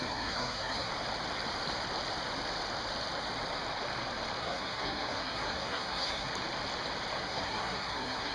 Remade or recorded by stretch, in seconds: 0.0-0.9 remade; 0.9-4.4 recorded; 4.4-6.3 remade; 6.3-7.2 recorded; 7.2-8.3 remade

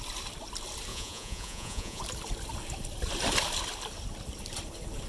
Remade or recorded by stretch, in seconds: 0.0-0.9 recorded; 0.9-2.0 remade; 2.0-5.1 recorded